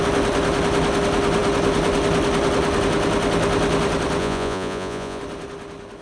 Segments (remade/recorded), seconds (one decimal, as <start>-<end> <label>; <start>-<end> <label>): 0.0-4.2 recorded; 4.2-5.2 remade; 5.2-6.0 recorded